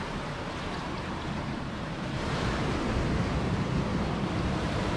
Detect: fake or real fake